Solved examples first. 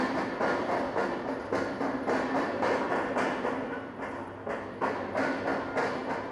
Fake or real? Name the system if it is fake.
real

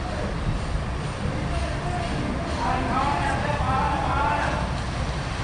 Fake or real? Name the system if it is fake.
real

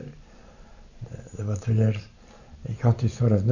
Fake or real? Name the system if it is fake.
fake, vocoder, BigVGAN v2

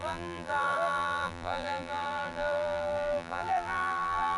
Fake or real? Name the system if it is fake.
fake, vocoder, BigVGAN v2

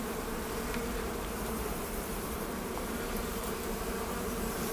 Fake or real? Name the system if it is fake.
fake, vocoder, BigVGAN v2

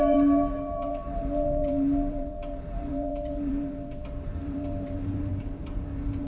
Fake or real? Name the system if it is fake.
fake, vocoder, BigVGAN v2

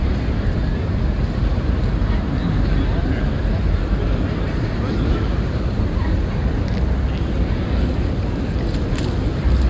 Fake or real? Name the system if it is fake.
real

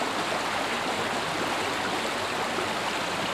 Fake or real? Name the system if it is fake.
real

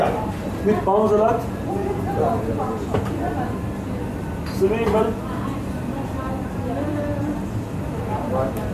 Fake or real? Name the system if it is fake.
real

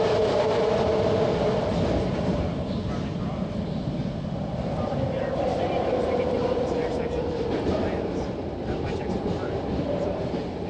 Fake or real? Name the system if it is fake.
real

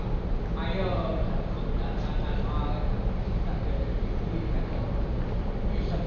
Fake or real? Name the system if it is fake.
real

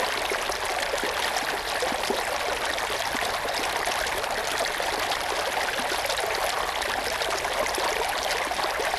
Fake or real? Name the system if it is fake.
real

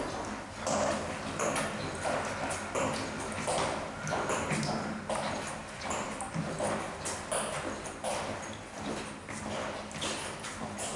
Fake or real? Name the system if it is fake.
real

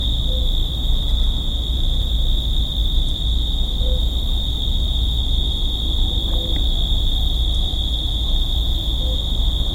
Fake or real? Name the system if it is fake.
real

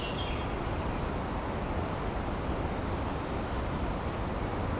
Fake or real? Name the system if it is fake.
fake, vocoder, BigVGAN v2